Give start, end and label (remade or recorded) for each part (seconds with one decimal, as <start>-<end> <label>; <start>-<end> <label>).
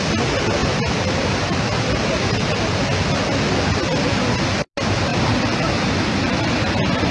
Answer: 0.0-0.6 recorded; 0.6-2.8 remade; 2.8-5.1 recorded; 5.1-6.5 remade; 6.5-7.1 recorded